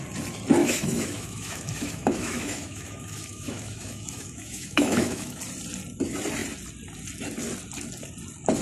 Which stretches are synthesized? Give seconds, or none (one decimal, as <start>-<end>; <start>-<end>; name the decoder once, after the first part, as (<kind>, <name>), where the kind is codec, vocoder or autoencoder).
0.6-5.4 (autoencoder, DAC-VAE)